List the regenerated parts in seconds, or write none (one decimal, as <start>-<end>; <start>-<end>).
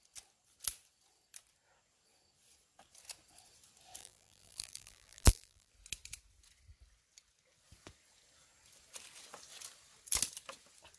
4.0-5.7